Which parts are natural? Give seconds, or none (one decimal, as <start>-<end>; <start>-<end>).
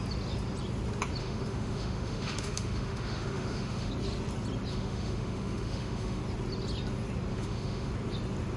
0.0-1.2; 3.9-4.7; 6.2-7.3; 7.9-8.6